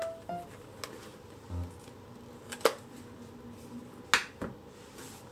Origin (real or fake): real